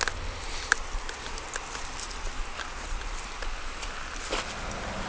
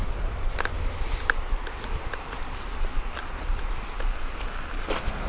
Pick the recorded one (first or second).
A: first